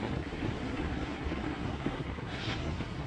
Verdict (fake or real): fake